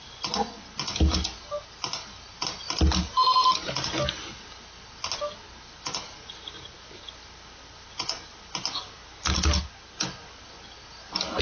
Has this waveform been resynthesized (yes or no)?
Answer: no